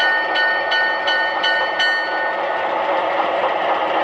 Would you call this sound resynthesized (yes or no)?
no